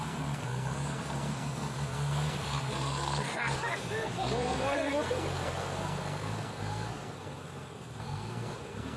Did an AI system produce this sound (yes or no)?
yes